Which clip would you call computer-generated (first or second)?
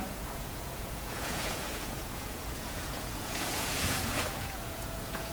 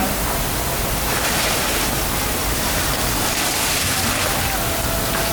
first